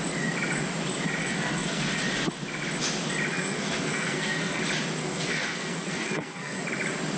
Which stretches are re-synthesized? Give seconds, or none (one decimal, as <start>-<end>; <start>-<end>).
1.2-2.0; 3.3-4.6; 5.0-6.6